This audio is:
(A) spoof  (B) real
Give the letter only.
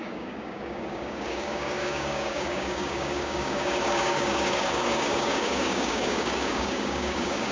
A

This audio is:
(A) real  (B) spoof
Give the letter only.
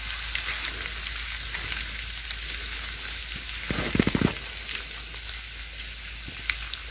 A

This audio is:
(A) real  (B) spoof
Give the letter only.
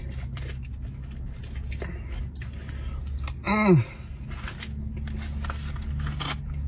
A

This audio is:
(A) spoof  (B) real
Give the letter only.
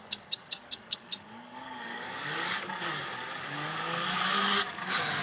A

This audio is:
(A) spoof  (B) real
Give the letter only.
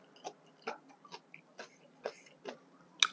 B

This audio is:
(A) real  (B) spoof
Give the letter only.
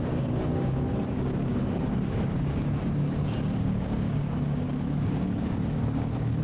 B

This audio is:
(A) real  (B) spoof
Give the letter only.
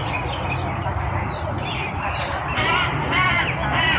A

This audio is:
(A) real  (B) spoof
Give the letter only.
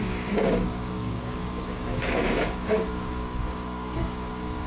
B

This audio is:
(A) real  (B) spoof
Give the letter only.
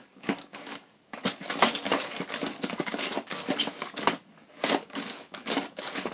B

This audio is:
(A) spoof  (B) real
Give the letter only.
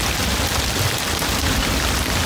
B